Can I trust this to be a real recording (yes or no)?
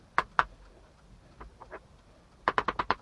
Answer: yes